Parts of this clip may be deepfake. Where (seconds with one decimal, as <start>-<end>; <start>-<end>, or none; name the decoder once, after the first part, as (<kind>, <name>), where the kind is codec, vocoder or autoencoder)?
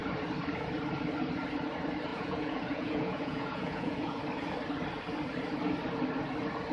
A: 2.1-4.2 (vocoder, Vocos)